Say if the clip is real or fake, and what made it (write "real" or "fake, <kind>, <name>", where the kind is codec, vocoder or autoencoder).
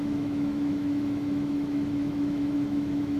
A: fake, autoencoder, DAC-VAE